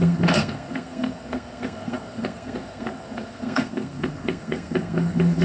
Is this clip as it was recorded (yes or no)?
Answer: no